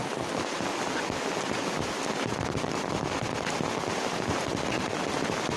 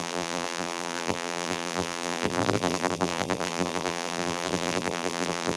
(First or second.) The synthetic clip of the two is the second